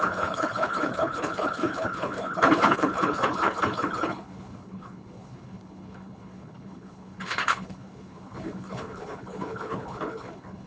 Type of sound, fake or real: fake